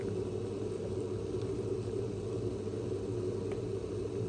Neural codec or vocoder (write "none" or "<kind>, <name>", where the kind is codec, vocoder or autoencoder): none